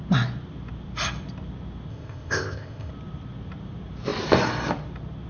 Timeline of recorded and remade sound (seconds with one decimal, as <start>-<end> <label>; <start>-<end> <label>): 0.0-1.9 recorded; 1.9-2.9 remade; 2.9-5.3 recorded